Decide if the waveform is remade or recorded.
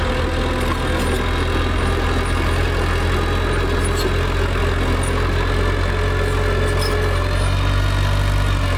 recorded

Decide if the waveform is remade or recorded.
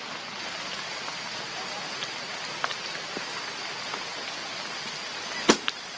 recorded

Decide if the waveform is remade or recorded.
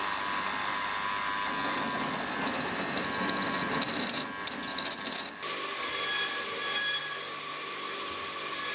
recorded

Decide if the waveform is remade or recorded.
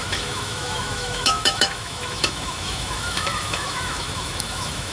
remade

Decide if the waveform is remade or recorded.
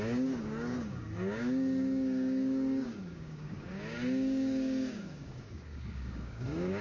remade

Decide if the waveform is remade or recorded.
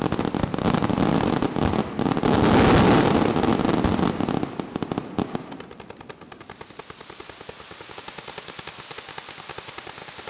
recorded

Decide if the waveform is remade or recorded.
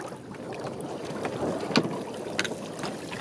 recorded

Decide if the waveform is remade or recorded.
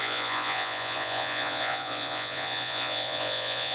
remade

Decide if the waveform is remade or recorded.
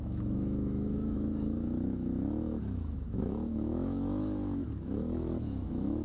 remade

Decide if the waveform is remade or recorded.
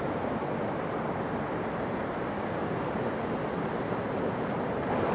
recorded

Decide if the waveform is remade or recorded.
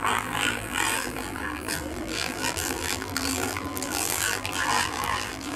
remade